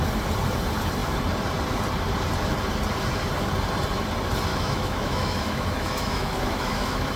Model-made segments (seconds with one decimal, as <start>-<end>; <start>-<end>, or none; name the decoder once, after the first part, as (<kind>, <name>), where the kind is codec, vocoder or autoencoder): 4.5-7.2 (autoencoder, DAC-VAE)